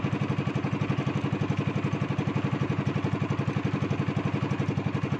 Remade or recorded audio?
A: recorded